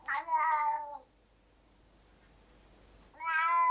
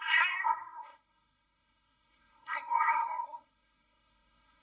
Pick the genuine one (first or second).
first